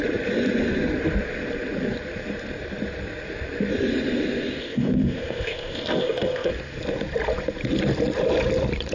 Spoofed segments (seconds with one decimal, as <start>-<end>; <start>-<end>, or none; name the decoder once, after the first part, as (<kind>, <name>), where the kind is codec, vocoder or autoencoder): 4.6-6.5 (codec, ZipCodec)

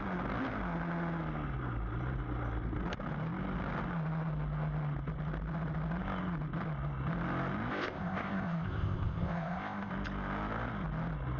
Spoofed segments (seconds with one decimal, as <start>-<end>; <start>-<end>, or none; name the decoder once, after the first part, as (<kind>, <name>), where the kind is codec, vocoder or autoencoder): 7.7-9.9 (codec, ZipCodec)

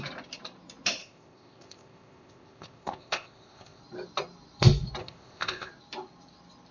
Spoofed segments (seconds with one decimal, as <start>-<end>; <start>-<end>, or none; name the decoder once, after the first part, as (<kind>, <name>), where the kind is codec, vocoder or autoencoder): 1.0-3.8 (codec, ZipCodec); 5.0-5.7

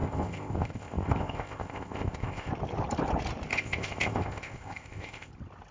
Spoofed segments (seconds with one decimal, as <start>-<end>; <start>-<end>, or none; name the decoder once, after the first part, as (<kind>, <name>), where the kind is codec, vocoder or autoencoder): 0.0-2.5 (codec, ZipCodec); 3.5-5.3